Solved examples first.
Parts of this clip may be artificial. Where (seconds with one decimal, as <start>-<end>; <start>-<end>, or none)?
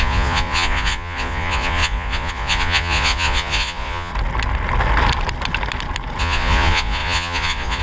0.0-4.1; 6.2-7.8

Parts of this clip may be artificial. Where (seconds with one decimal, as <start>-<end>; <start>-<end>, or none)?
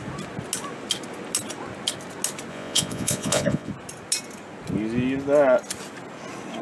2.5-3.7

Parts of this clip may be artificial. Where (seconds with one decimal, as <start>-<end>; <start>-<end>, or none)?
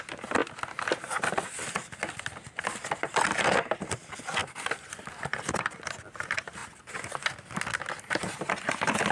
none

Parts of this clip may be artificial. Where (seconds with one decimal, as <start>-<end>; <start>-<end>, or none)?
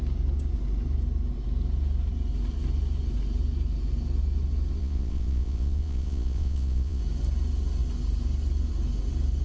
4.8-7.0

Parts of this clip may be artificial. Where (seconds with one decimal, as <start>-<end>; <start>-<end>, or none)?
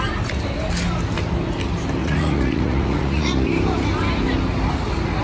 2.0-3.5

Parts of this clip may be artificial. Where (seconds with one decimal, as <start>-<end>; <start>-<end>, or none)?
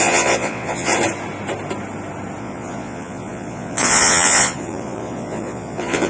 0.0-0.9; 2.4-6.1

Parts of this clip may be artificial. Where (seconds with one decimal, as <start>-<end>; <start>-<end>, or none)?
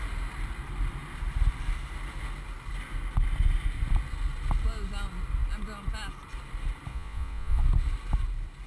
6.9-7.6